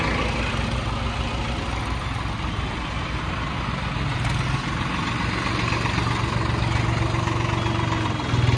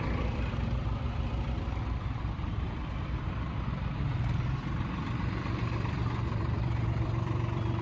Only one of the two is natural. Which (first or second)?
first